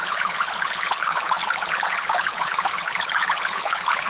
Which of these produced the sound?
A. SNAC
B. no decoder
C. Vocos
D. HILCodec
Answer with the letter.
D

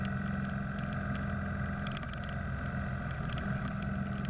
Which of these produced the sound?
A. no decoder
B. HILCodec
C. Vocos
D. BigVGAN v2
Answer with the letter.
A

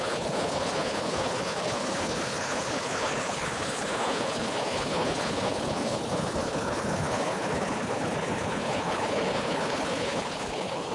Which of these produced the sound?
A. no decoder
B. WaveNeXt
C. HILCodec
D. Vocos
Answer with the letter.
C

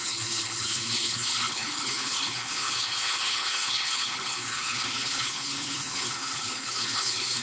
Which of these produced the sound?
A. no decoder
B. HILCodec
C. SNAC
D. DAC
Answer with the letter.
B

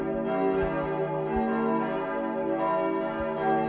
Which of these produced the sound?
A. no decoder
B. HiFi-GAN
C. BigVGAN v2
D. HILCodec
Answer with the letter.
A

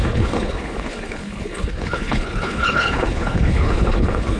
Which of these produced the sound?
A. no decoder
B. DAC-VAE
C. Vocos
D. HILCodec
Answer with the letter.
D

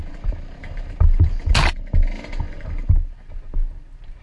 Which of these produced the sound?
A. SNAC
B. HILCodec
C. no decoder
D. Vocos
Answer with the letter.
C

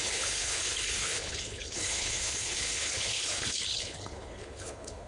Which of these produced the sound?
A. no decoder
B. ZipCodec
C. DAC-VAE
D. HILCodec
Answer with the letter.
D